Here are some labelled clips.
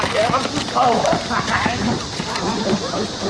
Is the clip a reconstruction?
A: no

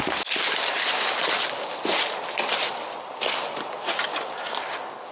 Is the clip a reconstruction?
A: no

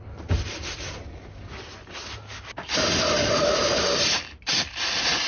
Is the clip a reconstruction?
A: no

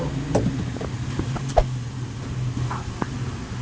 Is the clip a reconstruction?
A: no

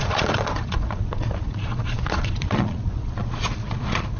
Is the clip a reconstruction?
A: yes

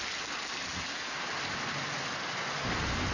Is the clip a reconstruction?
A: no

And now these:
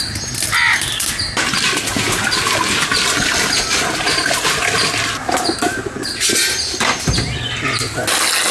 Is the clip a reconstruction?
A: no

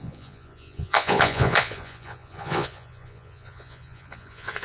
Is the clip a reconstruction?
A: yes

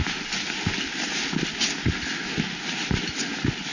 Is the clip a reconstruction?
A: no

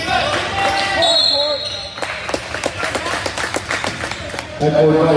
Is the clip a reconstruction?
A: no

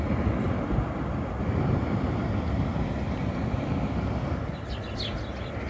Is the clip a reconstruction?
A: no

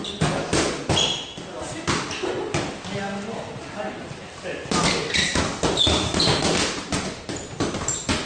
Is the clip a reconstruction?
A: no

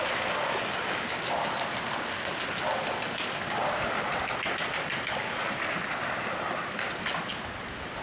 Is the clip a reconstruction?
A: no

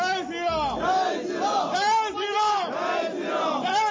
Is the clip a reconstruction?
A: no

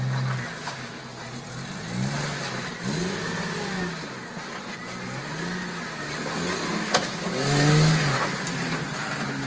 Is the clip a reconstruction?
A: no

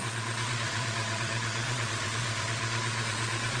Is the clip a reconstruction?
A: yes